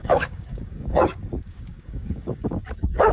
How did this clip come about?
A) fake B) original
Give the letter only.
A